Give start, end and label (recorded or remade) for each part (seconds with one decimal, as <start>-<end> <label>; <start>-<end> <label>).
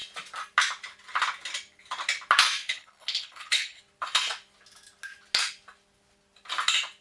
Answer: 0.0-2.6 recorded; 2.6-3.8 remade; 3.8-7.0 recorded